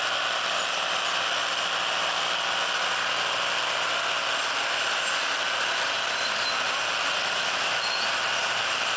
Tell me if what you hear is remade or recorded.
recorded